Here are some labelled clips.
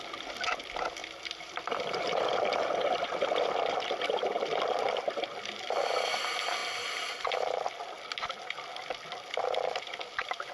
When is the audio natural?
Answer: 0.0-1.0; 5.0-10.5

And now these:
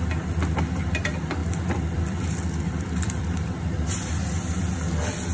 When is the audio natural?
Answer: 0.0-1.4; 4.6-5.3

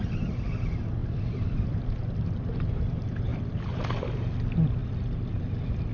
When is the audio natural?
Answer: 0.0-1.0; 1.8-3.3; 4.1-5.9

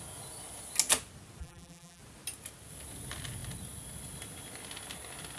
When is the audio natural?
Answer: 0.0-1.4; 2.0-5.4

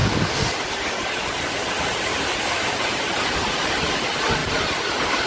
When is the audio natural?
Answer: 0.0-2.1; 4.0-5.3

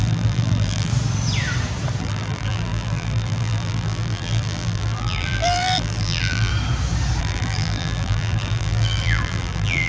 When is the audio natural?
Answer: 0.9-2.0; 6.5-7.2

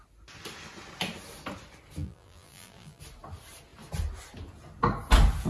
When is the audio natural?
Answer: 0.0-2.0; 3.0-5.5

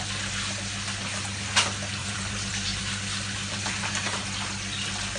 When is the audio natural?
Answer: 0.0-2.0; 2.8-3.4; 4.2-5.2